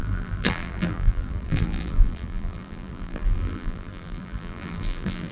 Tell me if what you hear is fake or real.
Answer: fake